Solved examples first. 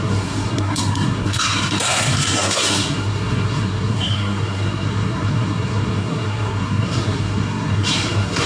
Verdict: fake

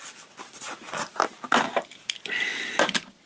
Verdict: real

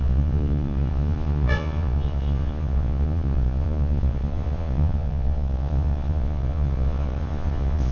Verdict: fake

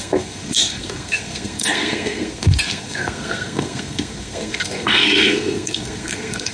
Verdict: fake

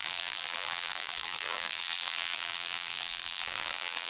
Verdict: fake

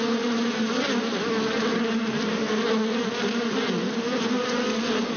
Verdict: real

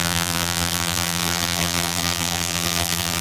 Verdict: fake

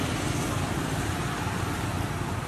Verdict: fake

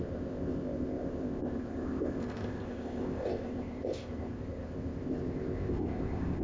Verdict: fake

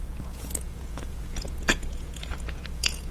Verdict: fake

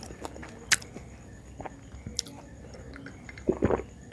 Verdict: real